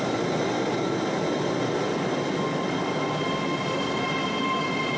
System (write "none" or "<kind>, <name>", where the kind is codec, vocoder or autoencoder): none